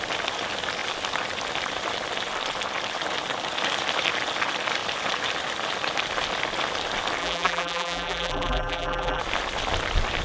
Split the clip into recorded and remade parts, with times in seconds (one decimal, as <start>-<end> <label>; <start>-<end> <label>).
0.0-7.2 recorded; 7.2-9.2 remade; 9.2-10.2 recorded